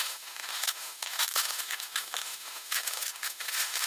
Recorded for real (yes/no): no